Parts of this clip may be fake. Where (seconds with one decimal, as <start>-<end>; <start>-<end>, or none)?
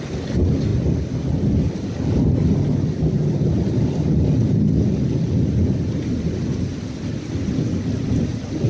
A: none